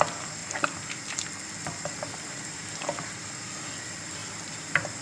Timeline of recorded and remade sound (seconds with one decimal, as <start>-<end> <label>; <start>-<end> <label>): 0.0-0.4 recorded; 0.4-3.1 remade; 3.1-4.2 recorded; 4.2-5.0 remade